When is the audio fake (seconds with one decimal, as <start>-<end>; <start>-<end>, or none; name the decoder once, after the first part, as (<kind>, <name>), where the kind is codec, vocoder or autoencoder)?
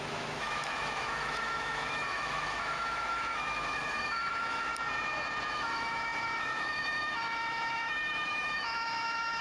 0.0-4.7 (autoencoder, DAC-VAE); 5.5-9.4